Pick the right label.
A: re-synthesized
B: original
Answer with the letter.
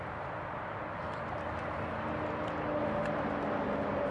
B